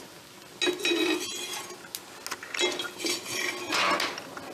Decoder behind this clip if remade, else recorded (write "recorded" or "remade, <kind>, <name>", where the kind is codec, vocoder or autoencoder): recorded